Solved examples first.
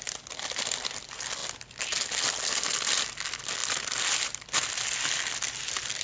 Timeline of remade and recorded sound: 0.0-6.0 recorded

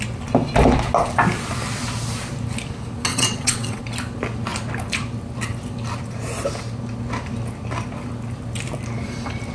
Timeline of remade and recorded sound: 0.0-3.1 recorded; 3.1-3.8 remade; 3.8-9.5 recorded

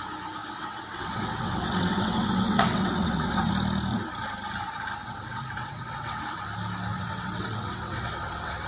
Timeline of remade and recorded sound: 0.0-0.4 recorded; 0.4-3.5 remade; 3.5-5.0 recorded; 5.0-6.2 remade; 6.2-6.9 recorded; 6.9-8.7 remade